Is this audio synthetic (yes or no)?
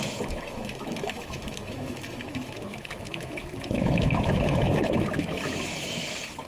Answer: yes